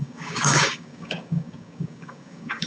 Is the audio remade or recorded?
remade